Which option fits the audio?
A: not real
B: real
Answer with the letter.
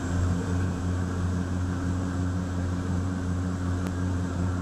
A